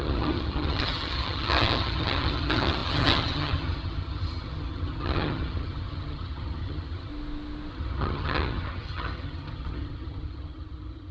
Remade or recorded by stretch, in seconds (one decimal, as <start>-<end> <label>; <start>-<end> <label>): 0.0-7.1 remade; 7.1-7.7 recorded; 7.7-11.1 remade